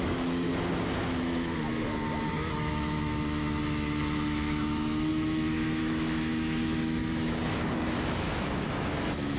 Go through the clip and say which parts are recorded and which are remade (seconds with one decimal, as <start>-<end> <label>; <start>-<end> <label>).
0.0-0.5 remade; 0.5-1.2 recorded; 1.2-9.4 remade